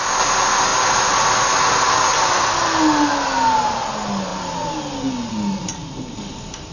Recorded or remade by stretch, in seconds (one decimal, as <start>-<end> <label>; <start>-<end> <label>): 0.0-6.7 recorded